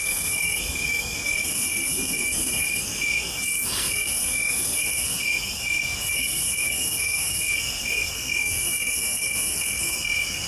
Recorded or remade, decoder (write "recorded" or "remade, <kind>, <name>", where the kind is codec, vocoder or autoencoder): remade, codec, SNAC